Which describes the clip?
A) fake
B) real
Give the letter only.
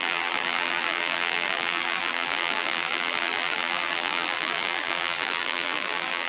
A